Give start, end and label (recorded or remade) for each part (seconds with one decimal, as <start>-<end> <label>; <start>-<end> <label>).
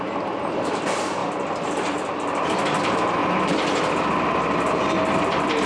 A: 0.0-5.7 recorded